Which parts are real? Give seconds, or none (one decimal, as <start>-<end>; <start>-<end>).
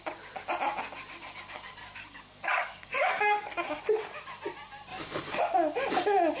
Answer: 0.0-1.8; 3.8-6.4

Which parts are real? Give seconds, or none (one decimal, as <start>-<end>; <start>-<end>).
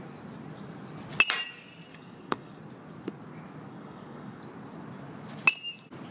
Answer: 0.0-1.9; 2.6-3.7; 4.4-6.1